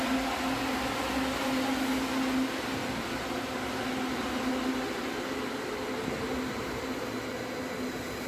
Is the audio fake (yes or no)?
no